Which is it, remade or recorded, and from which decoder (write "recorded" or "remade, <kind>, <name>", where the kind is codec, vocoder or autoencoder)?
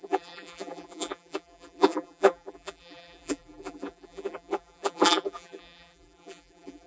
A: remade, vocoder, BigVGAN v2